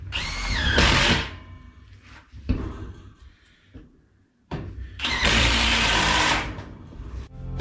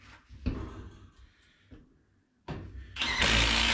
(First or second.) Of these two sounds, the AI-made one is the first